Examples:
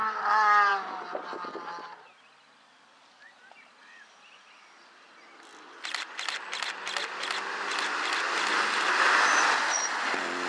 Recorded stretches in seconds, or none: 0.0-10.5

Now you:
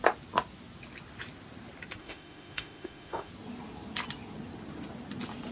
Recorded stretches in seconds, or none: 0.0-2.0; 3.3-5.5

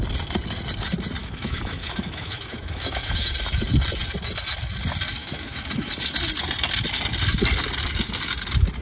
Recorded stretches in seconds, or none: 0.0-1.2; 3.3-5.2; 5.9-8.8

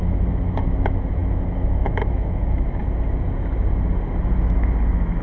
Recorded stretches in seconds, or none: 2.8-4.2

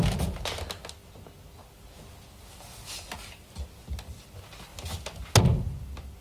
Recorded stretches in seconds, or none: 0.0-6.2

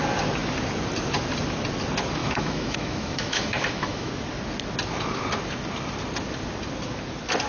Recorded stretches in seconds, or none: 0.0-2.2; 4.1-7.5

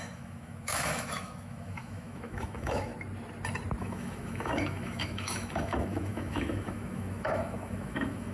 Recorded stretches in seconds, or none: 2.9-3.8